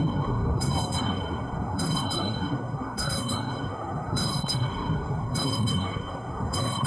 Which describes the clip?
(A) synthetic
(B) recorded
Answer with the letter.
A